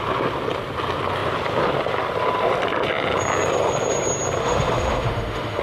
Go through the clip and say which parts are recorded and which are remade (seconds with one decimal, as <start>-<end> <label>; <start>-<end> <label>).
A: 0.0-4.4 recorded; 4.4-5.6 remade